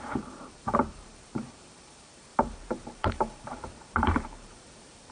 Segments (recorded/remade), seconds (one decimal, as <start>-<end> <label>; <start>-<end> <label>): 0.0-5.1 remade